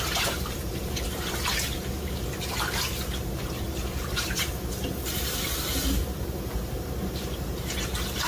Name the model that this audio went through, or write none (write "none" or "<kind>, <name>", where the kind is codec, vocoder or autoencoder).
vocoder, BigVGAN v2